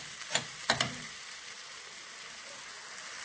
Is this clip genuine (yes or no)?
yes